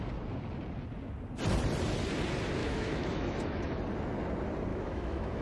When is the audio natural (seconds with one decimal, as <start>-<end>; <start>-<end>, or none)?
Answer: 0.0-2.6; 3.8-4.7